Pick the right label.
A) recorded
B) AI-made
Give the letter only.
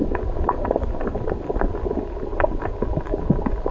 B